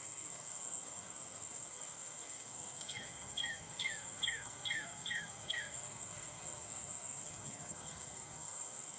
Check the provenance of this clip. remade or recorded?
remade